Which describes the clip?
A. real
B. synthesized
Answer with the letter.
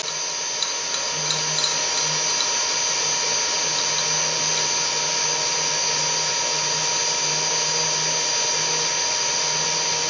A